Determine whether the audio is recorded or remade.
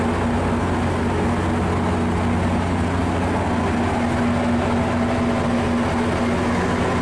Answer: recorded